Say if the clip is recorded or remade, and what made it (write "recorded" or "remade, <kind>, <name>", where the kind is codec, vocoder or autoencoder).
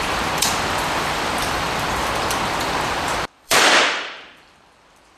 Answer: remade, vocoder, BigVGAN v2